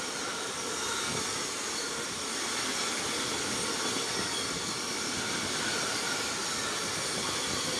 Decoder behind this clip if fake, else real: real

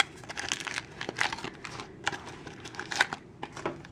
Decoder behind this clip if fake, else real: real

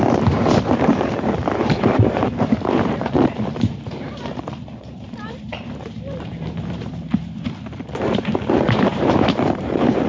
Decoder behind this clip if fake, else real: fake, vocoder, BigVGAN v2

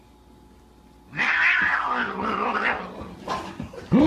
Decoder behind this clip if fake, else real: real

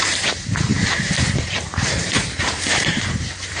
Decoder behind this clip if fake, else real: fake, vocoder, BigVGAN v2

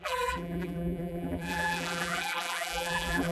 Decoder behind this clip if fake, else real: fake, vocoder, BigVGAN v2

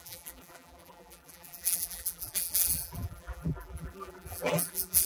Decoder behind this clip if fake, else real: fake, vocoder, BigVGAN v2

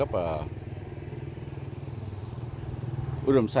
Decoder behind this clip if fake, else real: real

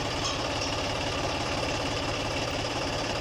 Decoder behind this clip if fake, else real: fake, vocoder, BigVGAN v2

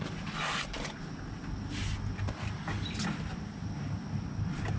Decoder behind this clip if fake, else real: real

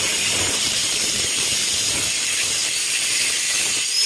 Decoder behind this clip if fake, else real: fake, vocoder, BigVGAN v2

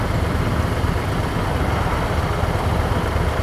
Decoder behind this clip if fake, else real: real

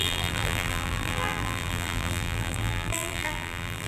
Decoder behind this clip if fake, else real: fake, vocoder, BigVGAN v2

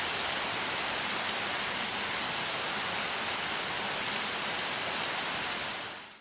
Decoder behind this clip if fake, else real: real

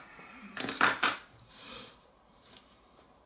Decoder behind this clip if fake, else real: fake, vocoder, BigVGAN v2